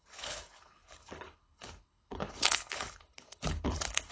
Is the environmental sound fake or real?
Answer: fake